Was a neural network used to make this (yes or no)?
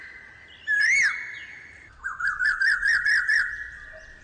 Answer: no